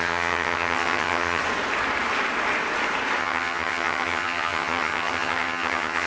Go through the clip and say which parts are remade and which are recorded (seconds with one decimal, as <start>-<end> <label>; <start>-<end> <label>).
0.0-1.4 remade; 1.4-3.2 recorded; 3.2-6.1 remade